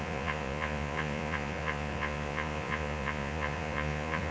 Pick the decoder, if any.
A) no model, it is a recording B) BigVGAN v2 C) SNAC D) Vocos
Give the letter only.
D